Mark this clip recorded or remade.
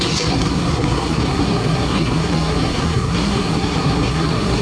remade